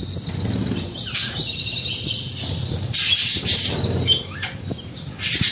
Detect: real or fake real